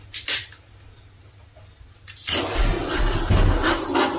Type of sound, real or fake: real